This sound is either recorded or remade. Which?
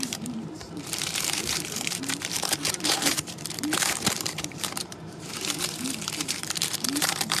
remade